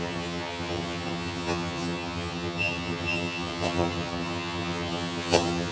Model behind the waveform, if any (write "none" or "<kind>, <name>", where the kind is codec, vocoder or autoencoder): vocoder, HiFi-GAN